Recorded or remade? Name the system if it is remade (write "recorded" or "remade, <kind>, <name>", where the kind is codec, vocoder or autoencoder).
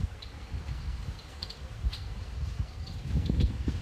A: remade, codec, SNAC